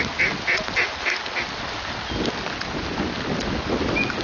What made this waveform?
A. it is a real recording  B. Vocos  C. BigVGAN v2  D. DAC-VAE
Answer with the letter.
A